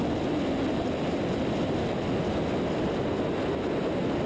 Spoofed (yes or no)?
no